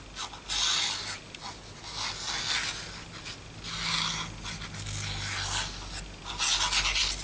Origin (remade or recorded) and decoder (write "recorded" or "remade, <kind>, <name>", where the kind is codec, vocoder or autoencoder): recorded